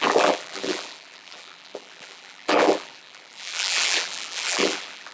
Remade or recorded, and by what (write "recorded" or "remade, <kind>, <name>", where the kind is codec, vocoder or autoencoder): remade, vocoder, BigVGAN v2